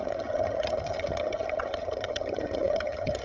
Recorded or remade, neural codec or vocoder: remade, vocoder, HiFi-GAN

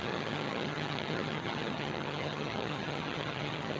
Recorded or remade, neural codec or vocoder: remade, vocoder, HiFi-GAN